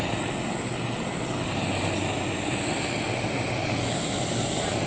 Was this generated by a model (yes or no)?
no